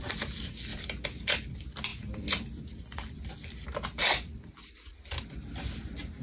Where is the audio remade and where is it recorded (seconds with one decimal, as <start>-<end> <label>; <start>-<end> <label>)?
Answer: 0.0-0.7 recorded; 0.7-1.3 remade; 1.3-1.9 recorded; 1.9-3.3 remade; 3.3-6.2 recorded